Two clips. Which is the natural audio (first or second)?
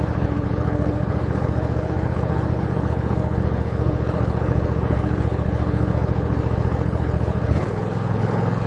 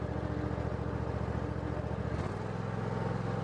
second